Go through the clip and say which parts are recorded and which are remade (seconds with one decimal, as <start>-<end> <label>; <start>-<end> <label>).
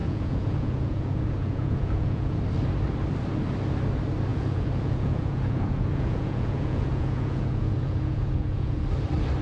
0.0-2.4 remade; 2.4-4.3 recorded; 4.3-8.8 remade; 8.8-9.4 recorded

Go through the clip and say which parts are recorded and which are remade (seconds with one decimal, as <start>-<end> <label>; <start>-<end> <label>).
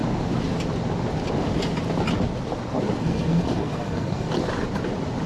0.0-3.0 recorded; 3.0-4.3 remade; 4.3-5.3 recorded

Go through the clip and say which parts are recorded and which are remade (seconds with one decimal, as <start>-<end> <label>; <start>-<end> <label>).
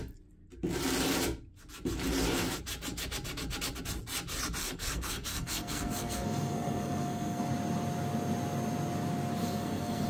0.0-4.6 recorded; 4.6-7.5 remade; 7.5-9.4 recorded; 9.4-10.1 remade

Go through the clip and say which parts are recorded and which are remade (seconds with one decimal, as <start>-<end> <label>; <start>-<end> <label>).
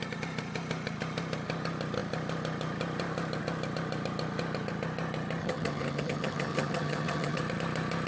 0.0-5.4 recorded; 5.4-7.4 remade; 7.4-8.1 recorded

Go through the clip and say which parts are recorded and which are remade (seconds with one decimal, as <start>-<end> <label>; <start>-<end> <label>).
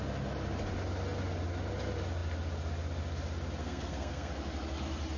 0.0-3.6 recorded; 3.6-4.3 remade; 4.3-5.2 recorded